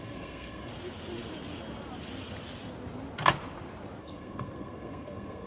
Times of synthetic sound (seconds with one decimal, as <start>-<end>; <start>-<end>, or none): 0.0-0.7; 4.0-5.5